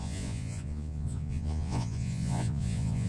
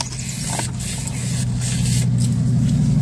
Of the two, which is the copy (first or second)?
first